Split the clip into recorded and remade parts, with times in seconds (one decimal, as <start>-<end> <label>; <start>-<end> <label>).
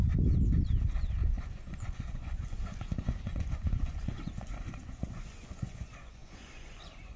0.0-7.2 remade